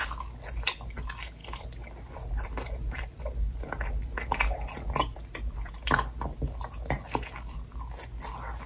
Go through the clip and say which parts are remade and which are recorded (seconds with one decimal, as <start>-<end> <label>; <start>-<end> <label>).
0.0-8.7 recorded